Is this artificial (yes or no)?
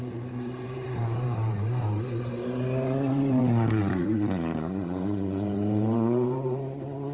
yes